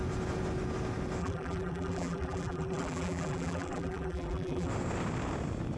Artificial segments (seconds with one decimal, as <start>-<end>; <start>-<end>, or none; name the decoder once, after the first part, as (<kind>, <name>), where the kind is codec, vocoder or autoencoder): 1.2-4.7 (vocoder, BigVGAN v2)